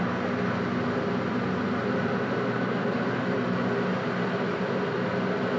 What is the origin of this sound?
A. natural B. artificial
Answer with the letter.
A